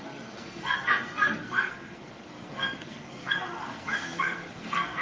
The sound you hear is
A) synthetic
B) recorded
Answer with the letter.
A